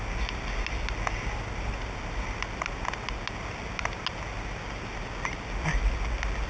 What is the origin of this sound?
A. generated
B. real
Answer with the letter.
B